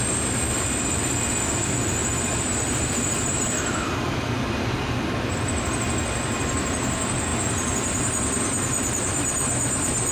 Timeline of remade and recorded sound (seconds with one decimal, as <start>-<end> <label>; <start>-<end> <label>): 0.0-2.0 recorded; 2.0-3.9 remade; 3.9-7.3 recorded; 7.3-10.1 remade